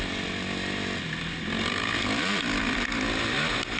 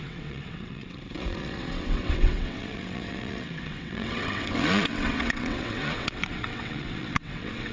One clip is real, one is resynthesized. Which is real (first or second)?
first